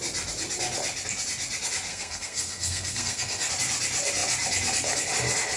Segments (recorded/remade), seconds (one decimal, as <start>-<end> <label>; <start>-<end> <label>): 0.0-1.9 recorded; 1.9-3.5 remade; 3.5-5.6 recorded